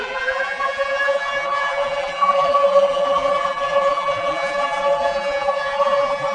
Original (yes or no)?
no